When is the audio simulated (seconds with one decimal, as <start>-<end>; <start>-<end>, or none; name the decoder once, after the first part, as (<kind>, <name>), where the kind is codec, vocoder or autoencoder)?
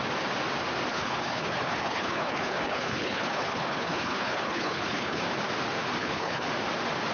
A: 0.9-5.2 (codec, HILCodec); 6.0-6.5